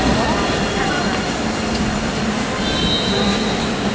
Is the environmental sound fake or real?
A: real